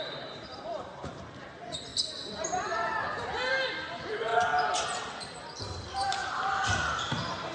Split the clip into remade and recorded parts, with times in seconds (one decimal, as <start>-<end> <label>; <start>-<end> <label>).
0.0-1.9 remade; 1.9-3.5 recorded; 3.5-4.3 remade; 4.3-5.6 recorded; 5.6-7.5 remade